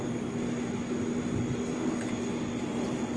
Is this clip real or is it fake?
real